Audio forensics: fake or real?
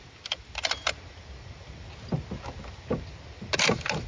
real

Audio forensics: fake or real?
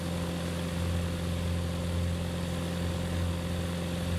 real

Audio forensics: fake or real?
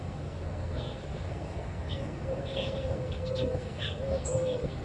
fake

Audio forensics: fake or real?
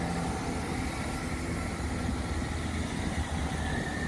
real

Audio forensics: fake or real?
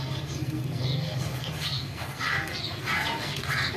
fake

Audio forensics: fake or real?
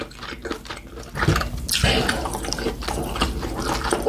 real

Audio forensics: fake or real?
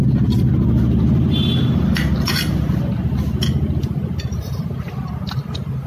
real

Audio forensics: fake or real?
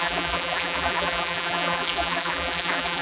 fake